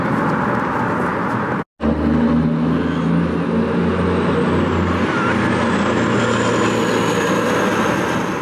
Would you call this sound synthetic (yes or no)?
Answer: no